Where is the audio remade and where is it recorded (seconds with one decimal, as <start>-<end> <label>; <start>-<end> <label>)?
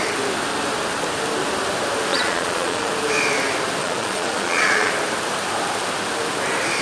0.0-2.1 recorded; 2.1-2.9 remade; 2.9-3.8 recorded; 3.8-4.9 remade; 4.9-6.8 recorded